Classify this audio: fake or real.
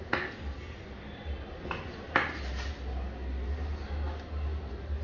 real